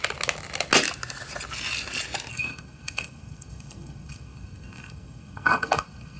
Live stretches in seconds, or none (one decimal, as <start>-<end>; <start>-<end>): 0.0-2.3